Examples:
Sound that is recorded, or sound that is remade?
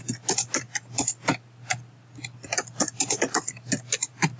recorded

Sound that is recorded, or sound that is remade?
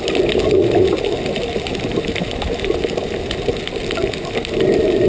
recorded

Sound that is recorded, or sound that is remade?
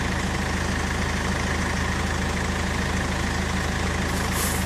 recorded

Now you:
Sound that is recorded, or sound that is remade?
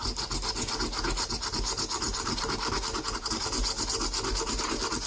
recorded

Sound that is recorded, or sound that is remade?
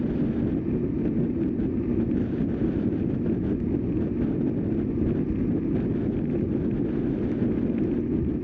recorded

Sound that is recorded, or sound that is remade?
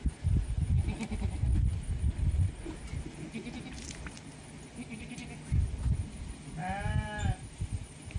recorded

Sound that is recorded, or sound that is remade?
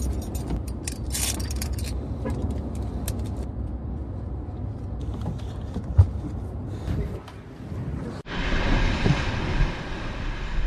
recorded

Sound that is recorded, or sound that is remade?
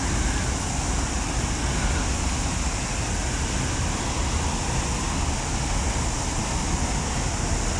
recorded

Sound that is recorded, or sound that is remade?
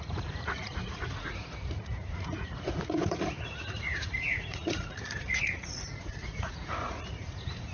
remade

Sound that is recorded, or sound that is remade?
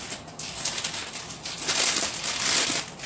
recorded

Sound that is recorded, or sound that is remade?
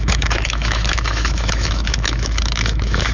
remade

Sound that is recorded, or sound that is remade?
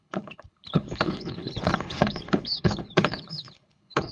remade